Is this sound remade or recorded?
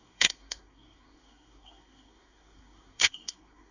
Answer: remade